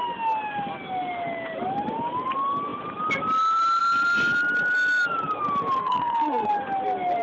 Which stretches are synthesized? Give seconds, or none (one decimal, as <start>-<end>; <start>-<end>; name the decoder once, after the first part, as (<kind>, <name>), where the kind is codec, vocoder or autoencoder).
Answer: 5.8-6.5 (codec, SNAC)